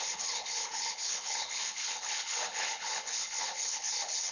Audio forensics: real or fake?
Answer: fake